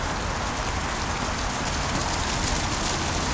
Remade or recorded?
recorded